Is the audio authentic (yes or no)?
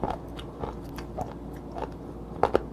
yes